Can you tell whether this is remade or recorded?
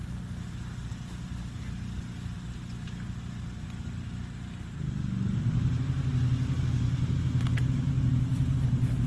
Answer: recorded